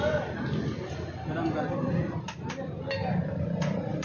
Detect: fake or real real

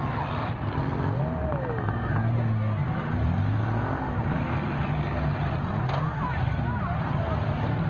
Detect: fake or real real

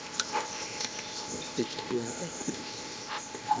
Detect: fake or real fake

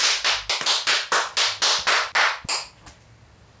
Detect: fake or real real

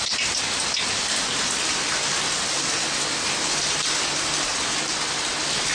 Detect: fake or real real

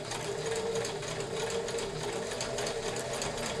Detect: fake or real real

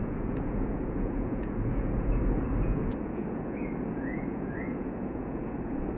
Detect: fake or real fake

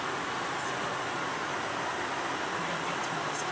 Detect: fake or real real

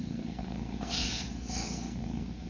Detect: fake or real fake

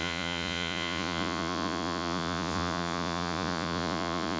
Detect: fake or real fake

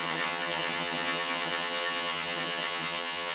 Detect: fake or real fake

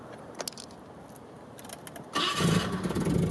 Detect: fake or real real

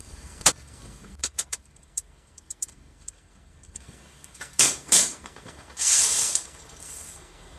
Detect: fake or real fake